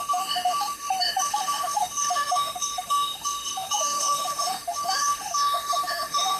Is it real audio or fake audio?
fake